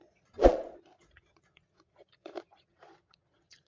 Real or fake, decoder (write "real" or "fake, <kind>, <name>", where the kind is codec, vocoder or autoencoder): fake, vocoder, Vocos